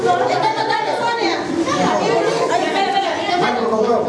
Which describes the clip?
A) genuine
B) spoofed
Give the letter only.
A